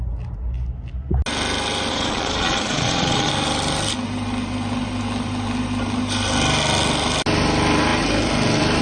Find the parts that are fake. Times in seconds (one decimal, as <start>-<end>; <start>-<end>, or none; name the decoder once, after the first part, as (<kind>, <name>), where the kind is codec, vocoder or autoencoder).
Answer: 1.9-3.3 (vocoder, Vocos)